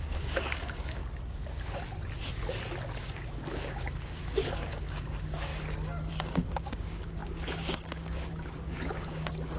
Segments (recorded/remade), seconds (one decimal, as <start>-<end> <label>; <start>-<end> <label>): 0.0-1.0 remade; 1.0-3.0 recorded; 3.0-5.5 remade; 5.5-6.1 recorded; 6.1-9.6 remade